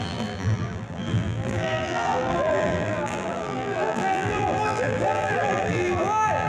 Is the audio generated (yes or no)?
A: yes